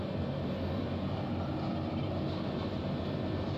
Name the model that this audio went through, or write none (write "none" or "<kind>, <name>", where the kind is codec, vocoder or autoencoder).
none